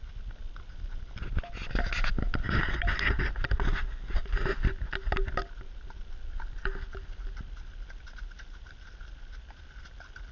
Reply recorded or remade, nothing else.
recorded